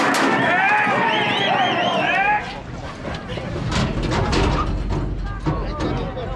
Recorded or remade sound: recorded